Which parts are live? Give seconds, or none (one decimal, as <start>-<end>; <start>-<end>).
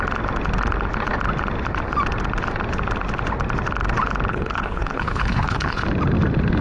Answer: 0.0-4.3; 5.8-6.6